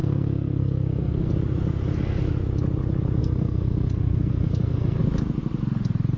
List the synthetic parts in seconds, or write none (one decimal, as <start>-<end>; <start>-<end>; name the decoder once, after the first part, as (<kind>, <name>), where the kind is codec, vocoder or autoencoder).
0.0-1.3 (codec, SNAC); 3.2-5.0